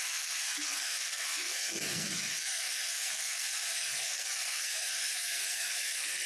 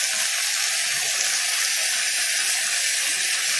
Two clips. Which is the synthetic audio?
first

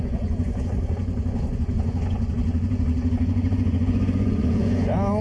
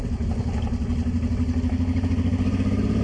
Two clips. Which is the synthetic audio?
first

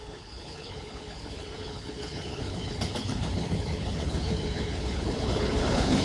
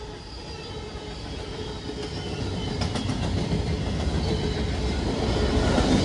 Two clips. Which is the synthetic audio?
first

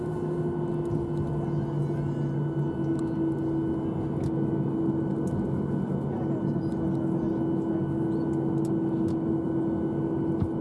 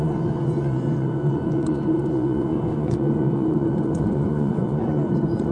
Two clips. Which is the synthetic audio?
second